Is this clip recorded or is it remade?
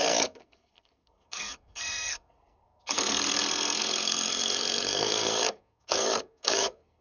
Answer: remade